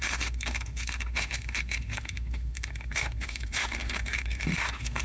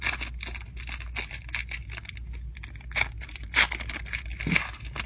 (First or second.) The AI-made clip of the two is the first